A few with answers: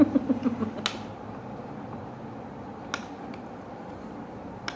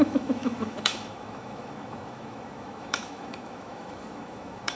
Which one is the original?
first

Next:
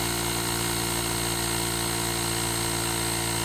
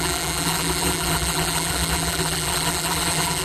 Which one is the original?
first